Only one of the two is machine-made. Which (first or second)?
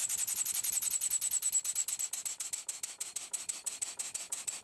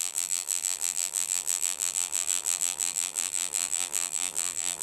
second